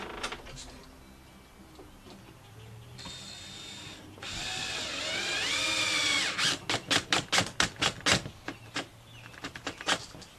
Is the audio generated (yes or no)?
no